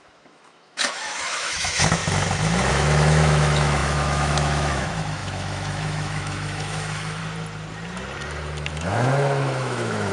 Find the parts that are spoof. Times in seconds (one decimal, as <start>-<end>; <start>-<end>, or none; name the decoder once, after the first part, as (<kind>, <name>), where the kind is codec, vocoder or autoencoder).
0.0-2.0 (autoencoder, DAC-VAE); 2.7-7.2; 8.7-10.1